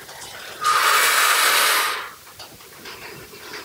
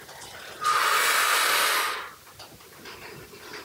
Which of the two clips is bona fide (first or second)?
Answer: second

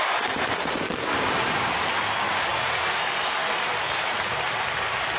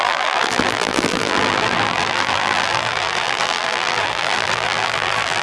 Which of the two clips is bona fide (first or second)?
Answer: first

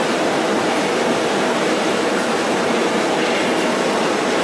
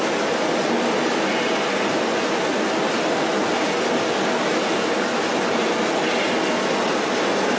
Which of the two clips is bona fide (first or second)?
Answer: second